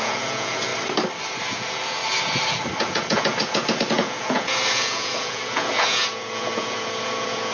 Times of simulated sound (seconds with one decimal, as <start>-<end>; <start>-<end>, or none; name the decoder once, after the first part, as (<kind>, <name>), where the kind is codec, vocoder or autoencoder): 0.0-0.7 (vocoder, Vocos); 1.4-2.0; 2.8-7.5